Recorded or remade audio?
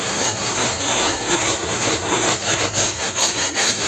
remade